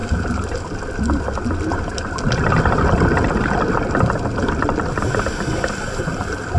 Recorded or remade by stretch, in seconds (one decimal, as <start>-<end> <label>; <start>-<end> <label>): 0.0-1.2 remade; 1.2-6.6 recorded